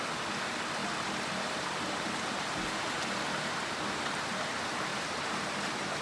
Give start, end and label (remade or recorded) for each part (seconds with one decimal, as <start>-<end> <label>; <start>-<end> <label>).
0.0-0.8 recorded; 0.8-4.4 remade; 4.4-4.9 recorded; 4.9-6.0 remade